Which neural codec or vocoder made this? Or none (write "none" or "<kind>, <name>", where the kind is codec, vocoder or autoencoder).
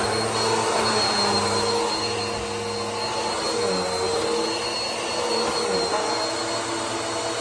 none